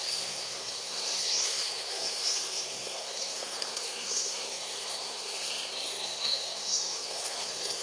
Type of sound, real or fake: fake